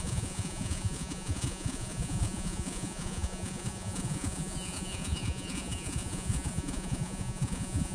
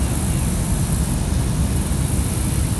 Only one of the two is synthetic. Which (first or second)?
first